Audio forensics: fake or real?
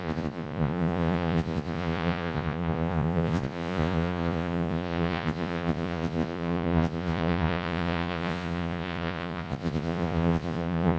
fake